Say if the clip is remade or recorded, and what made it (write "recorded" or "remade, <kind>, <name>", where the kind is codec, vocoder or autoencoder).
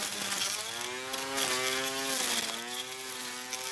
recorded